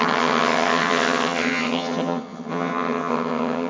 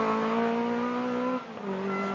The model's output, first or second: first